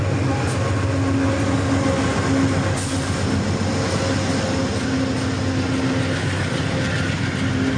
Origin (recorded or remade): recorded